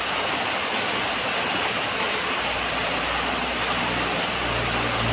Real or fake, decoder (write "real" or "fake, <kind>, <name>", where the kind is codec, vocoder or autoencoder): real